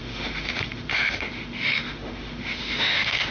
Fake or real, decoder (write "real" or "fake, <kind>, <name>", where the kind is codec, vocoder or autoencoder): fake, autoencoder, DAC-VAE